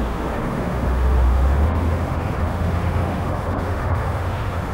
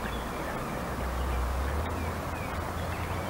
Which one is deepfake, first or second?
first